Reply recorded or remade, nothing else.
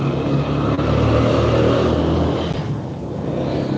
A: recorded